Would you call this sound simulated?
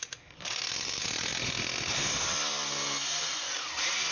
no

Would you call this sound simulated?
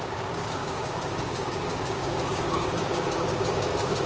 yes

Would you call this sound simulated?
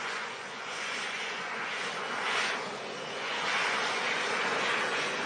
yes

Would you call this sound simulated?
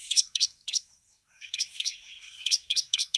yes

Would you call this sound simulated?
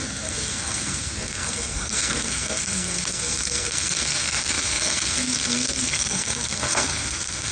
yes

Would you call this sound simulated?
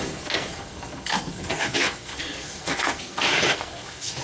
yes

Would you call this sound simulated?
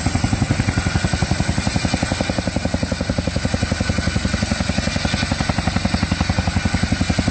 no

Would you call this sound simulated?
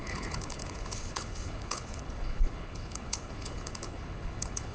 yes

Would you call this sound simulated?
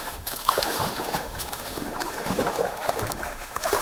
yes